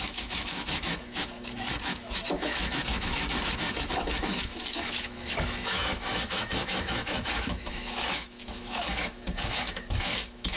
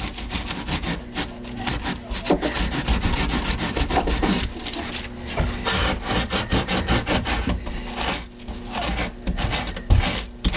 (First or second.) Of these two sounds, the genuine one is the second